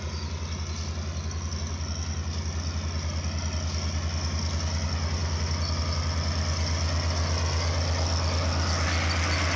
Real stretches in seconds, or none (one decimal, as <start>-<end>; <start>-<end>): 0.0-9.6